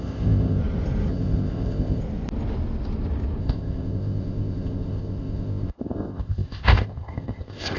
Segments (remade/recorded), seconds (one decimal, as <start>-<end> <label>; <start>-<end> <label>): 0.0-0.6 remade; 0.6-1.1 recorded; 1.1-2.0 remade; 2.0-3.4 recorded; 3.4-7.8 remade